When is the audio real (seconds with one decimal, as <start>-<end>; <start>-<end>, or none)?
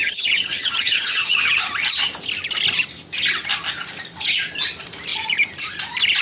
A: 1.6-6.2